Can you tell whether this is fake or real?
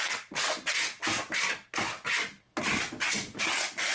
real